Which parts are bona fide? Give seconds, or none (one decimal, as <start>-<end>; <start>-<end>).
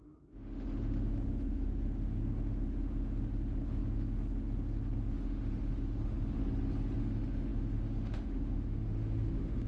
6.4-7.0